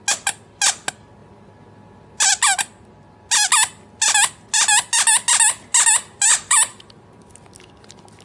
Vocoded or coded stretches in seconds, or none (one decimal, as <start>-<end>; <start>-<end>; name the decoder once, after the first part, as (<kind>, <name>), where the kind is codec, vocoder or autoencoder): 6.3-7.5 (vocoder, BigVGAN v2)